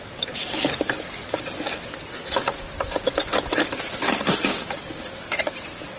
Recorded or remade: recorded